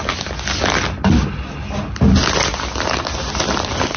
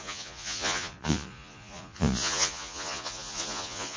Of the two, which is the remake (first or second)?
second